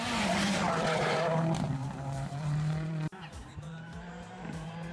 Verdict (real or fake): fake